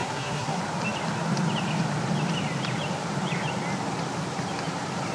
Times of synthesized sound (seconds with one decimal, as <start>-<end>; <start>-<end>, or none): 0.0-0.6